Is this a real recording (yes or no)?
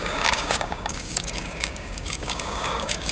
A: no